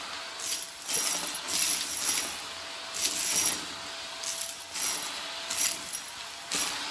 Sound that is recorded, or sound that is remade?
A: recorded